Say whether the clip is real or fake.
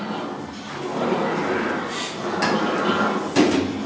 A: real